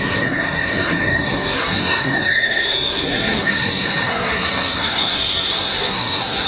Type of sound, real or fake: fake